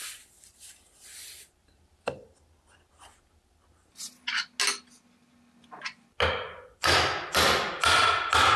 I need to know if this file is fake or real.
real